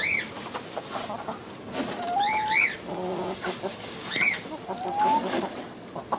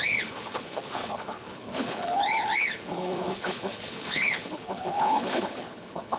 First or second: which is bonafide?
first